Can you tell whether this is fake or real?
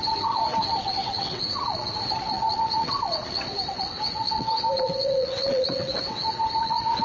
fake